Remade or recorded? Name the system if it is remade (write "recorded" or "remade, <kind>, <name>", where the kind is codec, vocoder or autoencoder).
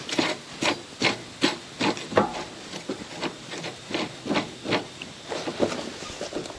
recorded